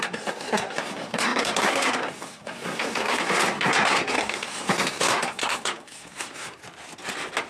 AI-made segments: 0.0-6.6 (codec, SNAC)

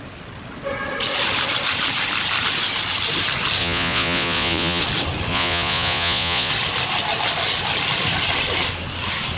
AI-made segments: 3.6-4.8 (vocoder, Vocos); 5.3-6.5

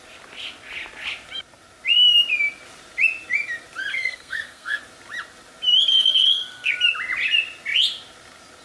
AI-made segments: 3.9-4.8 (codec, SNAC); 5.9-6.7

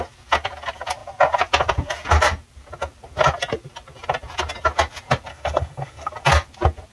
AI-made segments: 5.3-6.1 (codec, SNAC)

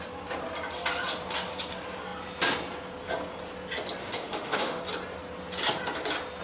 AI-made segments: 4.0-4.8 (autoencoder, DAC-VAE)

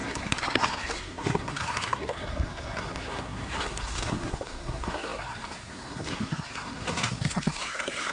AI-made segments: 0.0-8.1 (codec, SNAC)